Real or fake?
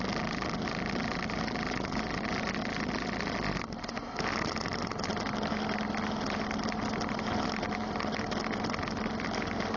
real